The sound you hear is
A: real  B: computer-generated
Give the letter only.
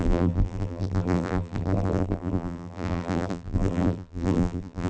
B